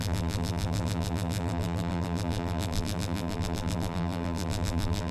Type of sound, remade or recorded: remade